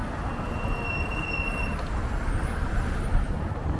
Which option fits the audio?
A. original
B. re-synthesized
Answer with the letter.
A